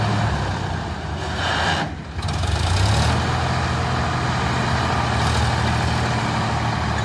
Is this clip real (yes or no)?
yes